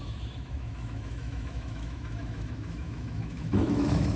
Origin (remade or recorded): remade